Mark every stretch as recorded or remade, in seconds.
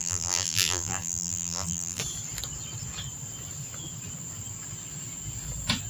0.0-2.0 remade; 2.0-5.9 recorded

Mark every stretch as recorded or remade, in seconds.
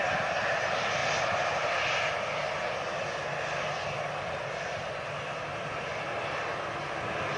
0.0-7.4 recorded